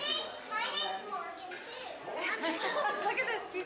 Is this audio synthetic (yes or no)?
no